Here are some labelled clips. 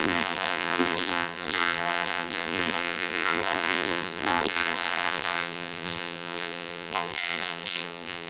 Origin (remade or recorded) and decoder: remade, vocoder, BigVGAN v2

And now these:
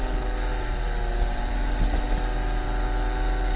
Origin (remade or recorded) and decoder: recorded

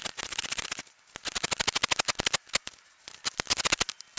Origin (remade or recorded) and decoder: recorded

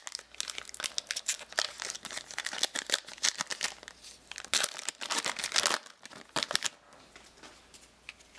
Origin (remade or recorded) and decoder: recorded